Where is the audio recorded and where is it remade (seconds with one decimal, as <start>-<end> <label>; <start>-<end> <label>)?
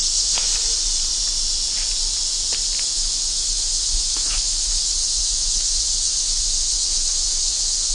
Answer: 0.0-0.5 remade; 0.5-2.8 recorded; 2.8-7.9 remade